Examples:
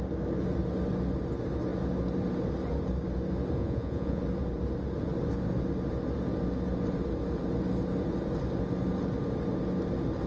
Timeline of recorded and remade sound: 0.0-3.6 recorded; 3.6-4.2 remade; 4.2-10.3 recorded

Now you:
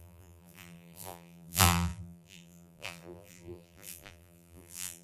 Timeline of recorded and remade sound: 0.0-5.0 remade

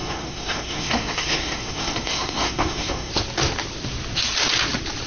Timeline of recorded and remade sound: 0.0-3.1 remade; 3.1-5.1 recorded

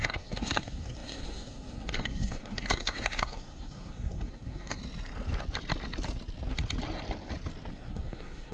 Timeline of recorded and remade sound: 0.0-4.8 remade; 4.8-7.7 recorded; 7.7-8.5 remade

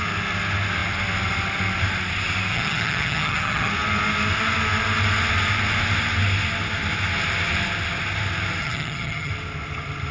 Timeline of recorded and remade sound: 0.0-2.5 recorded; 2.5-3.7 remade; 3.7-8.6 recorded; 8.6-9.3 remade; 9.3-10.1 recorded